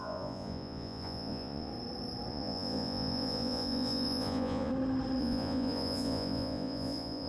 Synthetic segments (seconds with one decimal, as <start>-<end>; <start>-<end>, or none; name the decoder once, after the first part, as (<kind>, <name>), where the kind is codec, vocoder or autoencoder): 0.0-1.7 (vocoder, Vocos); 2.3-4.7; 5.2-7.3